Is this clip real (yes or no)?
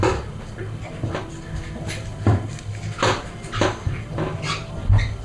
yes